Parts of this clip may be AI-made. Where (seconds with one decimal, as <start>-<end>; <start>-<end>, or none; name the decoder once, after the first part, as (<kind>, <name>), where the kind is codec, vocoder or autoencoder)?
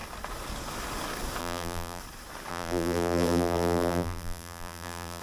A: 1.4-2.0 (vocoder, BigVGAN v2); 2.5-5.2